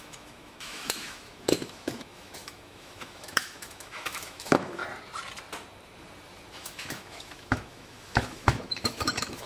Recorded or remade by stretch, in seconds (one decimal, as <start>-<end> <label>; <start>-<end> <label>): 0.0-4.8 remade; 4.8-6.5 recorded; 6.5-9.5 remade